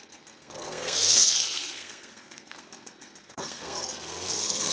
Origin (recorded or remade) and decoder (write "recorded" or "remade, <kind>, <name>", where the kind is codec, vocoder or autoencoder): remade, codec, SNAC